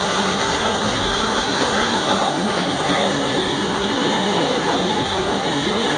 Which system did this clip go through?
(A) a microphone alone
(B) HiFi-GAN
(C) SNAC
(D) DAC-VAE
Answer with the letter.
C